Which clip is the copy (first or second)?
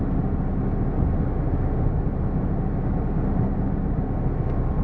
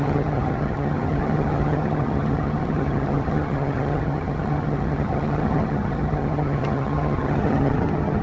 second